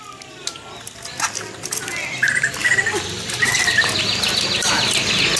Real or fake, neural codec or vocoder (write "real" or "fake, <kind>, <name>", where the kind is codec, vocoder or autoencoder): real